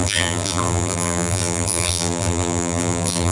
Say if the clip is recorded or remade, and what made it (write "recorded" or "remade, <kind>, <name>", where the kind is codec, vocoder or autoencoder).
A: remade, vocoder, BigVGAN v2